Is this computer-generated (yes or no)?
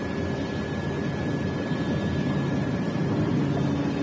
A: no